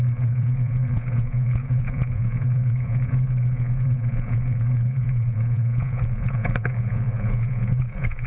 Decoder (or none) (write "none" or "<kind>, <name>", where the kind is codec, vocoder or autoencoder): vocoder, Vocos